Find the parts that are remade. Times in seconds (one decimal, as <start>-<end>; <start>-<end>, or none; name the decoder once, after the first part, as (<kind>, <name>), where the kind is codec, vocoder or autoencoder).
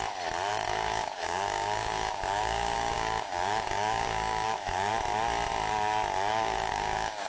0.5-4.9 (codec, DAC); 6.3-7.3